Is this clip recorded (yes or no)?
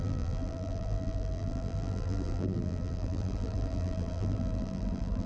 no